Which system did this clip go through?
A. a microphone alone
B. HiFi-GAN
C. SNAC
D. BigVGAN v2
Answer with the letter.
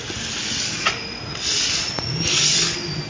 A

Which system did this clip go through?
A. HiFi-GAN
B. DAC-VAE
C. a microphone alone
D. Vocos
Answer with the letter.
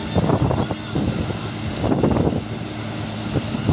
C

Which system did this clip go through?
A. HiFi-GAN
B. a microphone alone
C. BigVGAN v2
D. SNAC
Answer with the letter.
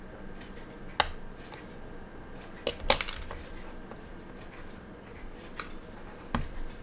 B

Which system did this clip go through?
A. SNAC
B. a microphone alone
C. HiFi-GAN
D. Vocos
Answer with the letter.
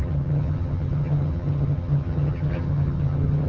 C